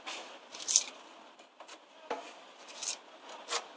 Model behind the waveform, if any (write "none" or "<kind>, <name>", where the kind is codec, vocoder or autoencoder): none